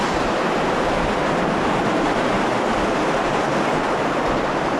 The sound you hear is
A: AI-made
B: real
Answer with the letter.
B